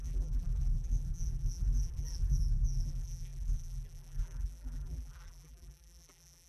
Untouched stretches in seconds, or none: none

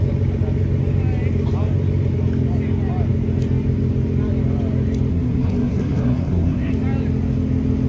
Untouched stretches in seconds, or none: 0.0-5.1; 6.7-7.9

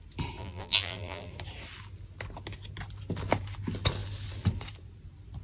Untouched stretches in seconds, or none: 0.0-0.4; 1.3-5.4

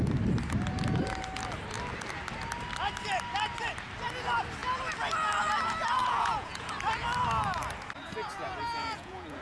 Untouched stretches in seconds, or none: 0.0-6.0; 6.7-8.4

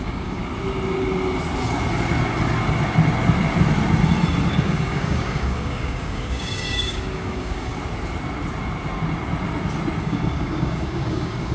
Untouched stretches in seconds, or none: 0.4-4.5; 7.7-10.0

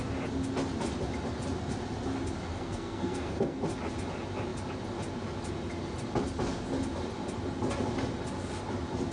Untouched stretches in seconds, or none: 0.0-2.5; 3.6-9.1

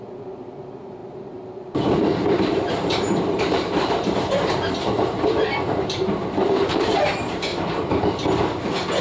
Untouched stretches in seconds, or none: 0.0-1.0; 4.7-7.5; 8.1-9.0